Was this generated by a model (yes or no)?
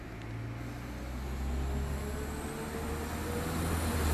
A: no